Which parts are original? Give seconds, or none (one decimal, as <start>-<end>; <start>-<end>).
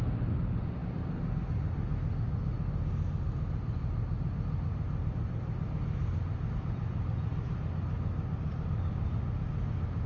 0.0-10.1